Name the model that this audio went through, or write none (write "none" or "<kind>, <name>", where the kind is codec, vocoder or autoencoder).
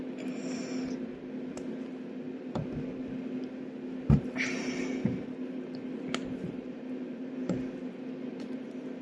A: none